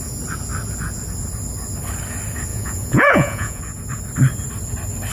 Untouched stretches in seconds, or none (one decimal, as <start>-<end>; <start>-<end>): 0.0-2.5; 3.6-5.1